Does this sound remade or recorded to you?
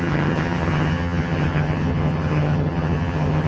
remade